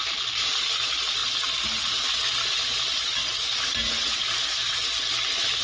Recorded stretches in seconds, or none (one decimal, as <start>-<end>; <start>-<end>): 0.0-5.6